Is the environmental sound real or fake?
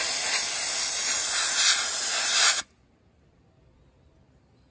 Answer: real